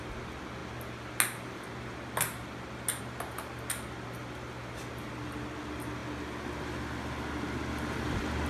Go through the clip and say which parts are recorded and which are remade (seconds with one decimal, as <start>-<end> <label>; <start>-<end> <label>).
0.0-8.5 recorded